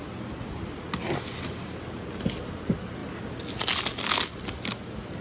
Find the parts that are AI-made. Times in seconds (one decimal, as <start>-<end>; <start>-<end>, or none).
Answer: none